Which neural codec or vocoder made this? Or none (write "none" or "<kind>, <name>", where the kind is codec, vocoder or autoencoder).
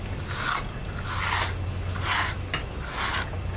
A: none